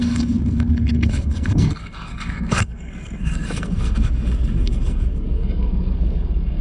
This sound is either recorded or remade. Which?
remade